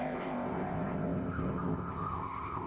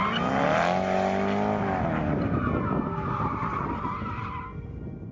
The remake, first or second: first